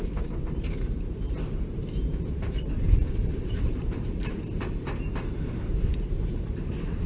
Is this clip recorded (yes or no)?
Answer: no